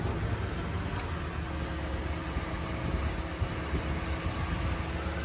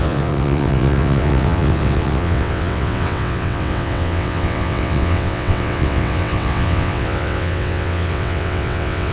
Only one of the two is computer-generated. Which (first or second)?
second